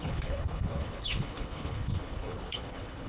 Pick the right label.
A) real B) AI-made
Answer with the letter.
B